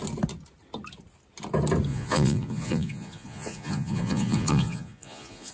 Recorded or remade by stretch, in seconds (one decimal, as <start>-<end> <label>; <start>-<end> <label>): 0.0-1.9 recorded; 1.9-5.5 remade